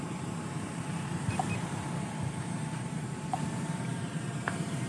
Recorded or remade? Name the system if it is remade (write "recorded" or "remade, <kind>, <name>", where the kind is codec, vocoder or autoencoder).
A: remade, vocoder, BigVGAN v2